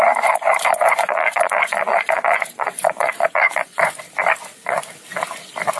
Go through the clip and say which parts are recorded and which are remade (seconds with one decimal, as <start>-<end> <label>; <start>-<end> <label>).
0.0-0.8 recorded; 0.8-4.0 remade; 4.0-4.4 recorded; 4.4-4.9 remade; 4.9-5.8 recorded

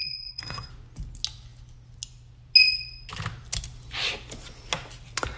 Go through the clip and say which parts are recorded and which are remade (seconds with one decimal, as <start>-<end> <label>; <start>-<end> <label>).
0.0-0.7 remade; 0.7-5.4 recorded

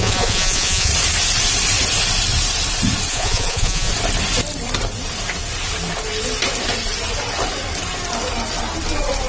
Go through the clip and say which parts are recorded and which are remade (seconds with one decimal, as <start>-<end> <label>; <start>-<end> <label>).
0.0-0.9 remade; 0.9-3.1 recorded; 3.1-3.9 remade; 3.9-9.3 recorded

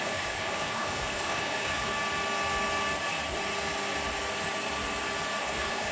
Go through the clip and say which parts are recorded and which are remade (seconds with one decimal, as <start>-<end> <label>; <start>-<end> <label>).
0.0-1.9 remade; 1.9-5.4 recorded; 5.4-5.9 remade

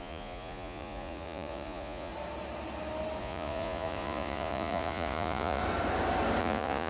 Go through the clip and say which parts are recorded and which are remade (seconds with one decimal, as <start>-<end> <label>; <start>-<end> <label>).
0.0-2.1 remade; 2.1-3.2 recorded; 3.2-5.6 remade; 5.6-6.4 recorded; 6.4-6.9 remade

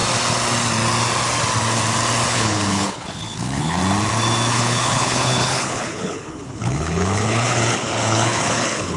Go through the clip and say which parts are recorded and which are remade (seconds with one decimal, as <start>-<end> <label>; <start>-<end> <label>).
0.0-2.3 recorded; 2.3-3.8 remade; 3.8-4.5 recorded; 4.5-9.0 remade

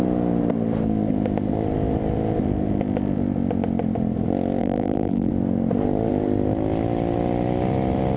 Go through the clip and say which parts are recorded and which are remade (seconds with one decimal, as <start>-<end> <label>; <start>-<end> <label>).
0.0-4.6 recorded; 4.6-5.3 remade; 5.3-8.2 recorded